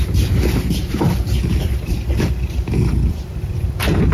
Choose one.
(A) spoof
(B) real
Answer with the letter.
A